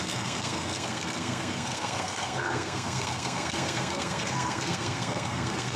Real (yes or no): no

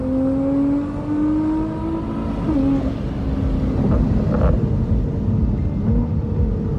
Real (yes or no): yes